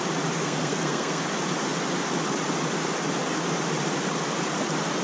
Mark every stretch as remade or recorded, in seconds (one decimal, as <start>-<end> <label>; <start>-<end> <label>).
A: 0.0-0.4 recorded; 0.4-1.2 remade; 1.2-5.0 recorded